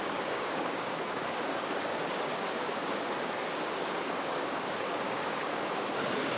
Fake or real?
fake